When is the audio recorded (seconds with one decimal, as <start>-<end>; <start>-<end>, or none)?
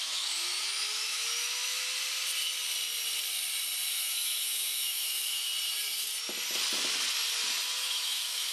1.8-3.9; 5.5-7.8